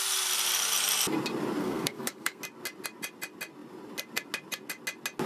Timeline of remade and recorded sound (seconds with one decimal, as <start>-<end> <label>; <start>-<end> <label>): 0.0-1.6 recorded; 1.6-2.4 remade; 2.4-5.3 recorded